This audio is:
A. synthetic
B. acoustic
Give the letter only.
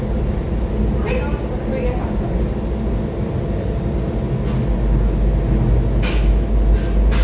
B